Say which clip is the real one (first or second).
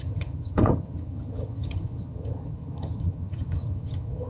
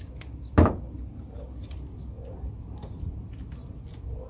second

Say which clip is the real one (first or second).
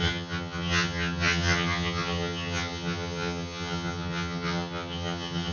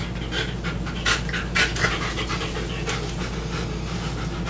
second